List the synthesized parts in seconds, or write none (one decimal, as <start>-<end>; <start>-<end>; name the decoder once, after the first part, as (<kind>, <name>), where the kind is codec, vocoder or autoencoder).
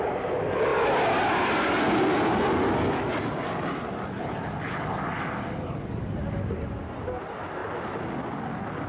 none